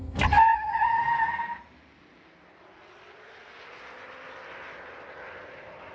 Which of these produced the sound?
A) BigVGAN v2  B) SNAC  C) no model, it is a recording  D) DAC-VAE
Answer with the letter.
C